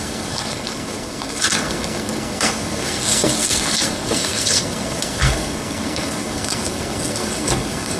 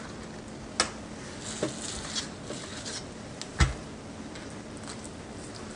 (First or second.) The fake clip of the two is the first